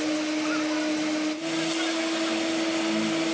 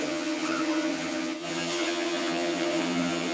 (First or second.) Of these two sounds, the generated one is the second